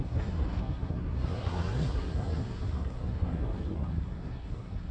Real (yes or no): no